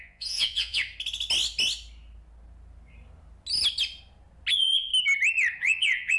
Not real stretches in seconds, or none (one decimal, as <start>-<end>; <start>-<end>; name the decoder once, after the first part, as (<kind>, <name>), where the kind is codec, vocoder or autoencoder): 0.0-0.8 (vocoder, Vocos); 4.5-4.9; 5.6-6.2